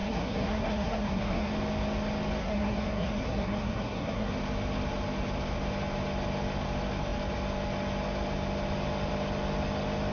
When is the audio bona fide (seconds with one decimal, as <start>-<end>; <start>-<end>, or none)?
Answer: 1.5-2.4; 4.3-10.1